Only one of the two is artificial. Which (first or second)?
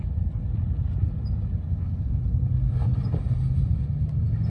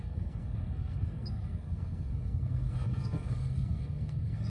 second